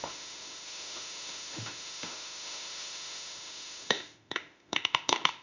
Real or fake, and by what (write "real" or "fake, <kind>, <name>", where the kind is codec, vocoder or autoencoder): fake, autoencoder, DAC-VAE